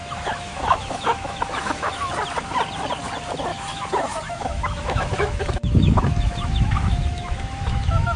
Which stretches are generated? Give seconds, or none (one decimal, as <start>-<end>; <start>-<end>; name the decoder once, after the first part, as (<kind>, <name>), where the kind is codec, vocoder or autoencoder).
0.0-2.1 (autoencoder, DAC-VAE); 3.5-8.2